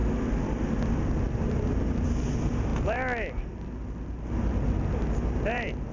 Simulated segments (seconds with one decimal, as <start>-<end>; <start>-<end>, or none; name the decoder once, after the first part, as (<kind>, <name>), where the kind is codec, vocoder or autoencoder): 0.0-0.7 (vocoder, BigVGAN v2)